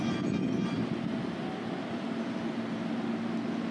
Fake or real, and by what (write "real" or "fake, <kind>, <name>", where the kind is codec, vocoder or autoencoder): real